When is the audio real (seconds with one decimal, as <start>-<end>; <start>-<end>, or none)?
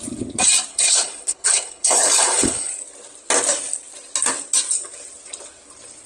0.0-0.7; 2.7-6.1